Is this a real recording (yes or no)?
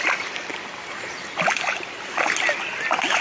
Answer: yes